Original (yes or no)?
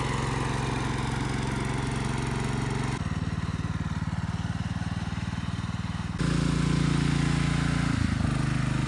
yes